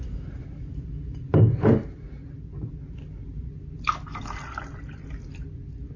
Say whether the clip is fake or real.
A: real